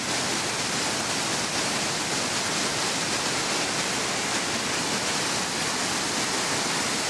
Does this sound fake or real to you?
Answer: real